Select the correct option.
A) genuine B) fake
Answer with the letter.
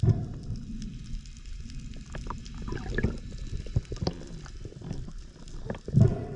A